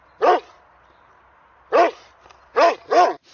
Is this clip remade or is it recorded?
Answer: recorded